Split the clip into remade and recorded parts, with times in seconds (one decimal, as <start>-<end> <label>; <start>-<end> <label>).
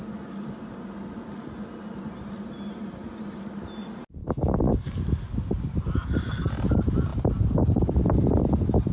0.0-4.2 recorded; 4.2-5.0 remade; 5.0-8.9 recorded